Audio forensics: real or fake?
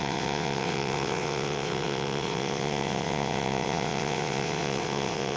fake